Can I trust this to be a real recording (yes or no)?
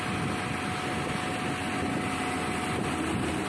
yes